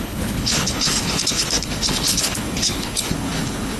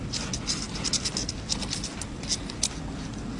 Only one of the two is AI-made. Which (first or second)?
first